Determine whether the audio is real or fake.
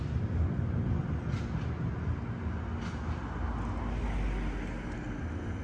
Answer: real